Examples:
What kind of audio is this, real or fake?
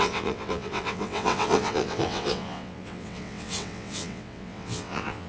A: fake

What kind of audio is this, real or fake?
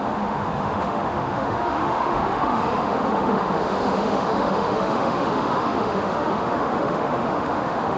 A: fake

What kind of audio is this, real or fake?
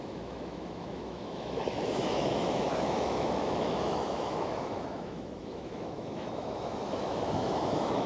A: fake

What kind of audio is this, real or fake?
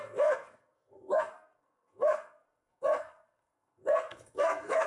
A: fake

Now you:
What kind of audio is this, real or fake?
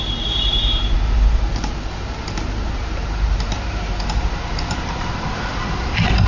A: fake